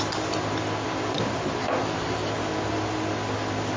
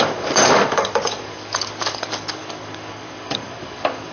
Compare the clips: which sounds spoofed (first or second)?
second